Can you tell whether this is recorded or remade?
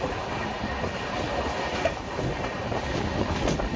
recorded